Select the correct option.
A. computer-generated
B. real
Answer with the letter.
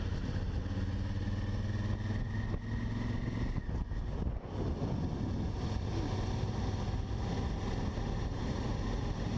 B